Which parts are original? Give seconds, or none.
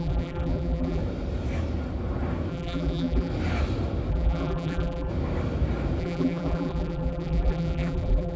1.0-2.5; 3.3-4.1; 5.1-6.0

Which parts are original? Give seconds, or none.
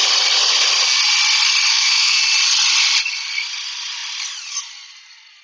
0.0-1.7; 2.2-5.4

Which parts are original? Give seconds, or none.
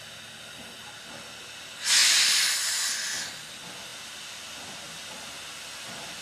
0.0-6.2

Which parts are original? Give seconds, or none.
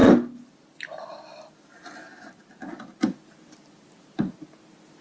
0.0-5.0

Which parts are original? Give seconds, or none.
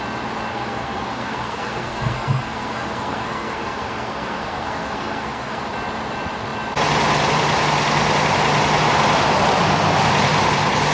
0.0-0.5; 5.6-10.9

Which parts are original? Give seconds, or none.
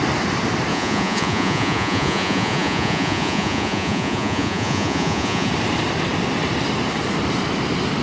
0.0-0.7; 5.5-8.0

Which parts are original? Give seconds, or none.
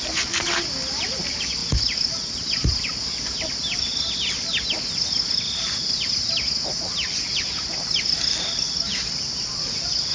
0.0-10.1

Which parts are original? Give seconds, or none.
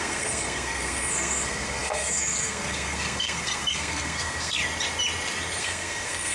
4.6-5.6